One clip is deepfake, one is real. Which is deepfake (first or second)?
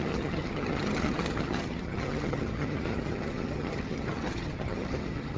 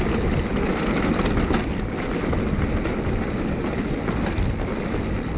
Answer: first